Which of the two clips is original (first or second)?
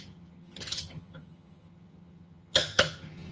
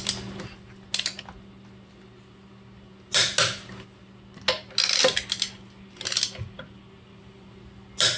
second